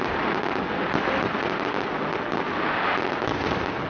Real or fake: real